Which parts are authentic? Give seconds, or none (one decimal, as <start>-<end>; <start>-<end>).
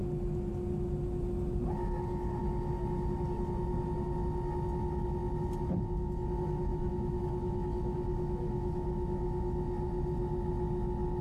0.0-6.7; 9.4-11.2